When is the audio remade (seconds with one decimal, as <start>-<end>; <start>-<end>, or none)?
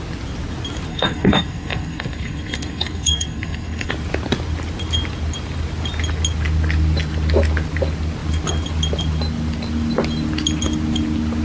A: 0.9-3.9